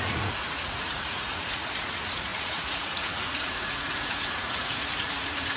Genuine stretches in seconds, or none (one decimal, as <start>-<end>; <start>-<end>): none